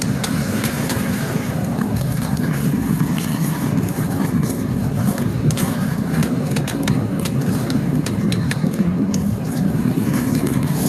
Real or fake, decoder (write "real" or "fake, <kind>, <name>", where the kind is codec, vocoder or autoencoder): fake, codec, SNAC